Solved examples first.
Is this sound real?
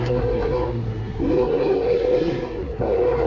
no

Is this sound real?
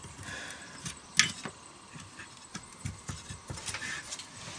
yes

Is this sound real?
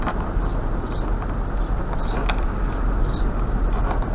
yes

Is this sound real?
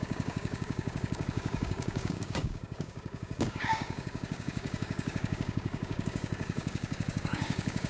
no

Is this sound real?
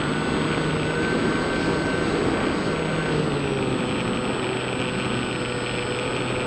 yes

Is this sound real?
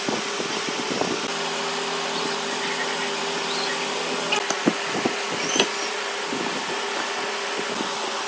yes